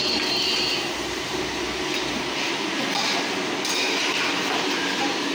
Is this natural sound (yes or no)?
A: yes